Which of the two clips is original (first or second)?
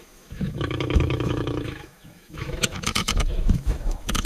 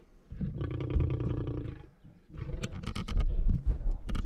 second